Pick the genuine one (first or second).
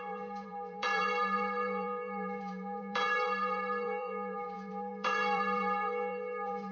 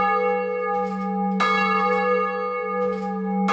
second